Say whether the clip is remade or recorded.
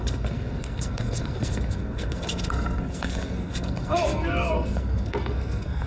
remade